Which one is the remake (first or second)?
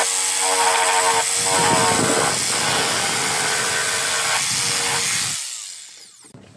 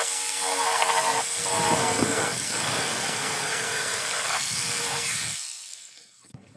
second